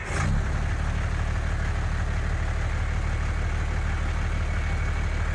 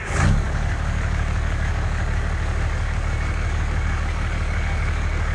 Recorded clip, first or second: first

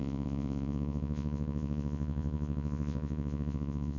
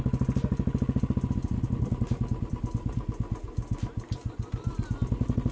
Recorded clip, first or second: second